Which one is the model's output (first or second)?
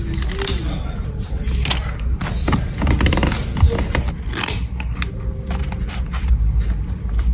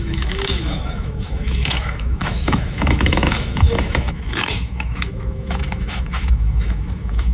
second